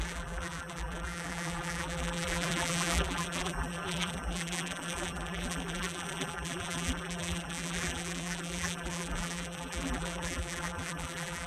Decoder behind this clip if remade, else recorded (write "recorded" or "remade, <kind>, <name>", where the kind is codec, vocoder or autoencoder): remade, vocoder, BigVGAN v2